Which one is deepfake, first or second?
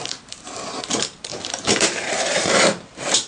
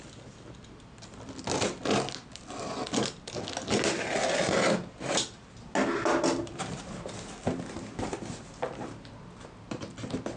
first